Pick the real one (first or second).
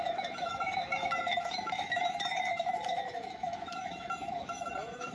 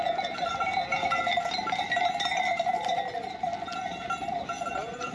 second